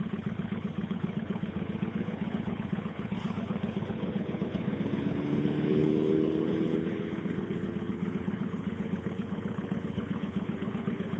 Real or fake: fake